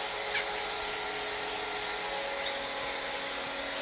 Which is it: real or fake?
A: real